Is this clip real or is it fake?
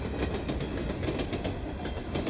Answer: real